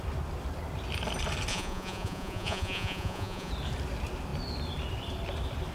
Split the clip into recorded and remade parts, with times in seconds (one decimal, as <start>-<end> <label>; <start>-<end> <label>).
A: 0.0-1.5 recorded; 1.5-3.5 remade; 3.5-5.7 recorded